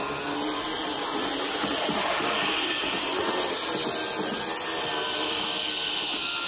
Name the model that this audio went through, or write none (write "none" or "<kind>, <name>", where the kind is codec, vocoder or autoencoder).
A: none